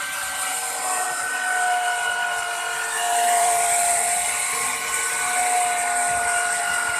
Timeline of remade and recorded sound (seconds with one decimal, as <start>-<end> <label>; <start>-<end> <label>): 0.0-0.5 recorded; 0.5-4.7 remade; 4.7-6.0 recorded; 6.0-6.6 remade; 6.6-7.0 recorded